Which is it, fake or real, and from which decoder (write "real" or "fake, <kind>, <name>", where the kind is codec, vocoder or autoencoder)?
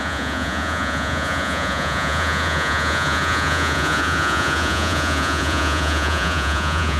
fake, vocoder, Vocos